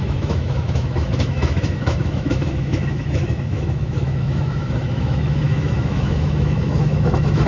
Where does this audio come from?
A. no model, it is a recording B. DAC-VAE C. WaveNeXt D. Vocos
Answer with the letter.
B